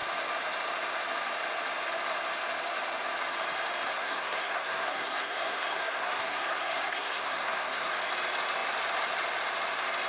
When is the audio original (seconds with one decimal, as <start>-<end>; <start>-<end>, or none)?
0.0-3.9; 7.9-10.1